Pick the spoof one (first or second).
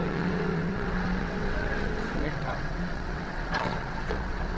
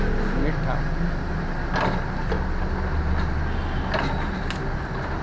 first